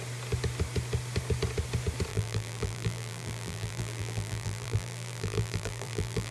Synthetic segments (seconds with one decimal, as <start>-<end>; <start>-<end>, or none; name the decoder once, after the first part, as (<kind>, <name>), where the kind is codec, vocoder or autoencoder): 2.1-6.3 (vocoder, BigVGAN v2)